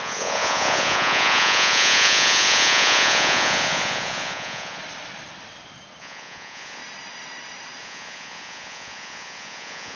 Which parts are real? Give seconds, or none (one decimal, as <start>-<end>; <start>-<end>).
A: 4.8-6.0; 6.8-7.8